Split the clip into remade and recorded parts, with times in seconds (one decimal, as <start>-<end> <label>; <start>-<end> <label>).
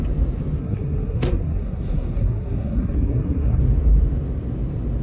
0.0-0.6 recorded; 0.6-3.6 remade; 3.6-5.0 recorded